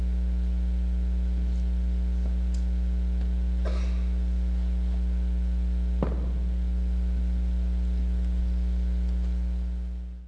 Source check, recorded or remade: recorded